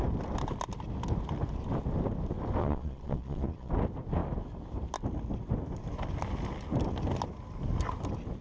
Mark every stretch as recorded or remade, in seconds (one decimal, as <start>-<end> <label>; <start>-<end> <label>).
0.0-2.6 recorded; 2.6-3.7 remade; 3.7-8.4 recorded